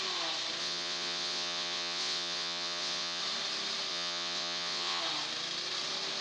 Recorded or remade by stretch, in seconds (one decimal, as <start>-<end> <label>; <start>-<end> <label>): 0.0-0.6 recorded; 0.6-3.2 remade; 3.2-3.9 recorded; 3.9-5.0 remade; 5.0-6.2 recorded